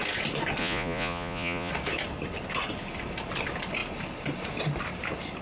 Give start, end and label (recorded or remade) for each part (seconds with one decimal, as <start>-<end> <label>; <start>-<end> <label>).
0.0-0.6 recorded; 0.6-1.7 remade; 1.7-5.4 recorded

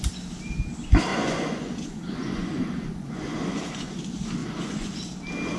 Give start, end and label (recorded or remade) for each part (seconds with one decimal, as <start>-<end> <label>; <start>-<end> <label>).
0.0-1.1 recorded; 1.1-4.0 remade; 4.0-4.4 recorded; 4.4-5.0 remade; 5.0-5.6 recorded

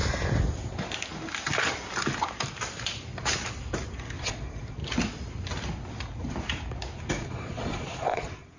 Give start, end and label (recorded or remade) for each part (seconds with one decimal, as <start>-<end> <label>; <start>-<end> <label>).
0.0-4.2 recorded; 4.2-4.8 remade; 4.8-7.1 recorded; 7.1-8.6 remade

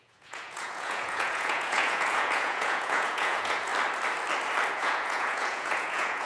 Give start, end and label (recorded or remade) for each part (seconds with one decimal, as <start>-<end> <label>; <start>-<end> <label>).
0.0-3.7 remade; 3.7-4.7 recorded; 4.7-6.3 remade

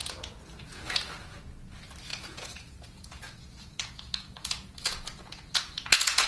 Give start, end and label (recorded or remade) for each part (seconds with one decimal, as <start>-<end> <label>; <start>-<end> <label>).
0.0-1.1 remade; 1.1-2.1 recorded; 2.1-6.3 remade